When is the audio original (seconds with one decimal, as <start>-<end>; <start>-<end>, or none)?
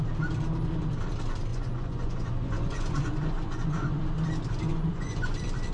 0.0-1.5; 4.0-4.7; 5.3-5.7